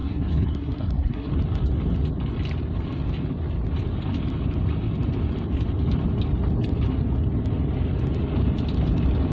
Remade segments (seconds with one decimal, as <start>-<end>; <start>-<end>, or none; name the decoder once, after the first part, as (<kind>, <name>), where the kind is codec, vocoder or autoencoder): 0.0-1.3 (codec, SNAC)